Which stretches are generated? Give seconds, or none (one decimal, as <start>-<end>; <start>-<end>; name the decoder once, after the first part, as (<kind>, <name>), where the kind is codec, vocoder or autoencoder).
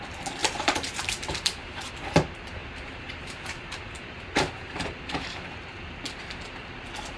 0.4-1.9 (vocoder, BigVGAN v2); 2.6-5.3